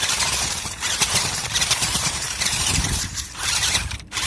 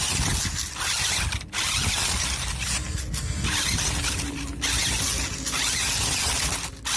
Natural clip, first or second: second